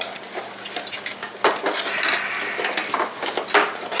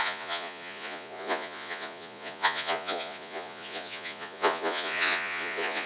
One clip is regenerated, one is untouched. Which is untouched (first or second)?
first